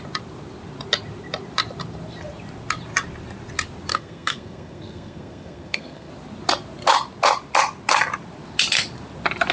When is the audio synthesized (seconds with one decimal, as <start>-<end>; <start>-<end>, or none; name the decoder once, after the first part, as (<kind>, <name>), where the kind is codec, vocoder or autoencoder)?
3.9-6.1 (codec, SNAC)